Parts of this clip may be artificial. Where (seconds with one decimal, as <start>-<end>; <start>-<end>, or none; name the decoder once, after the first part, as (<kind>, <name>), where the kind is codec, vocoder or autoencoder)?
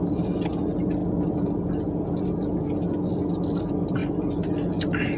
none